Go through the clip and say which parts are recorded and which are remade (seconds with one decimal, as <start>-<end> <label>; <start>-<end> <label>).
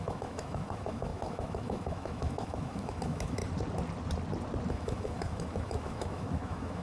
0.0-3.4 remade; 3.4-4.7 recorded; 4.7-6.8 remade